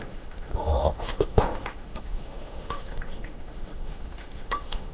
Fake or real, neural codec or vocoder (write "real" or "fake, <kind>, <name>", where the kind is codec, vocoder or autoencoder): fake, autoencoder, DAC-VAE